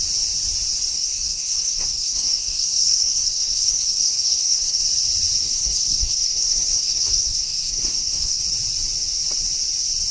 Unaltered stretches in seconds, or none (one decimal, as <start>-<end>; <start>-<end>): 0.0-0.9; 4.8-5.4; 8.4-10.1